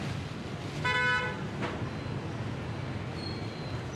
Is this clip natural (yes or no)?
yes